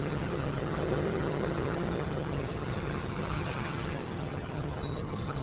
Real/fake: fake